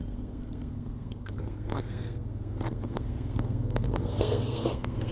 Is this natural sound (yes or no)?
no